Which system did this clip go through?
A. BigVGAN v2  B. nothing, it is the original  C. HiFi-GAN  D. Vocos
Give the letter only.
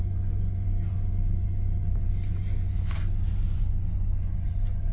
D